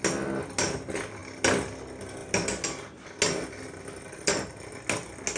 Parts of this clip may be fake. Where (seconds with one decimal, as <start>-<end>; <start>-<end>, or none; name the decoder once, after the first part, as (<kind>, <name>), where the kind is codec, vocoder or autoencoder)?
none